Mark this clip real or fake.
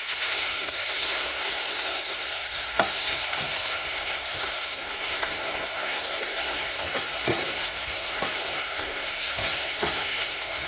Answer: fake